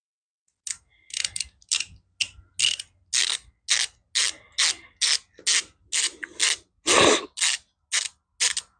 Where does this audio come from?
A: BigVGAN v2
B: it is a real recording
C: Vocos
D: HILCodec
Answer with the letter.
B